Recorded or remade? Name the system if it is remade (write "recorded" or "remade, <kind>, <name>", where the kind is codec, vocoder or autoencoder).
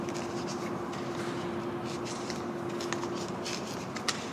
recorded